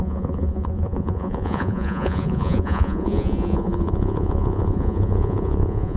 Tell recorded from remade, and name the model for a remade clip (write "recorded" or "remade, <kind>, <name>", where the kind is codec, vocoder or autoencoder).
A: remade, vocoder, Vocos